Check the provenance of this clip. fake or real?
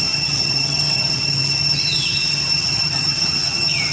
fake